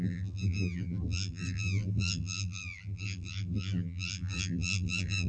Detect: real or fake fake